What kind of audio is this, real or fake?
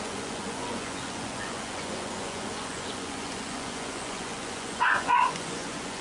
fake